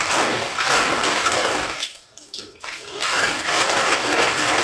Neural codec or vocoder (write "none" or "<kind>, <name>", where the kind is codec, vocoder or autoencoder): codec, DAC